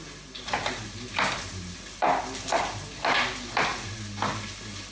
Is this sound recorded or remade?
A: recorded